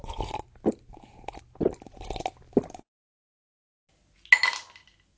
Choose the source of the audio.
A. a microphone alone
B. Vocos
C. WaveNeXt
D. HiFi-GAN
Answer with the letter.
A